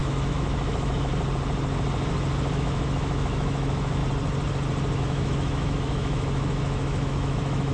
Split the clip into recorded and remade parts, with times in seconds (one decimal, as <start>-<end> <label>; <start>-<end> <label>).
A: 0.0-1.1 remade; 1.1-2.5 recorded; 2.5-4.0 remade; 4.0-5.0 recorded; 5.0-7.7 remade